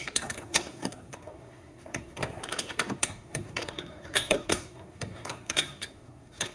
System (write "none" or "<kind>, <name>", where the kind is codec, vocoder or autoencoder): codec, SNAC